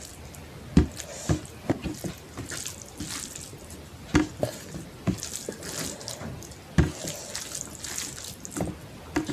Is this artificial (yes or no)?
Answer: no